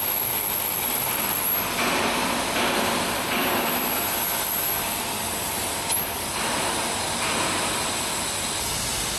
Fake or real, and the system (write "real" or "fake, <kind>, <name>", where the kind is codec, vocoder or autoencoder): real